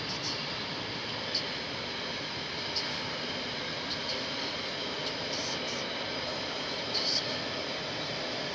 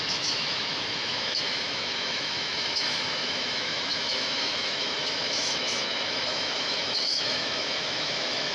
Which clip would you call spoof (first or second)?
second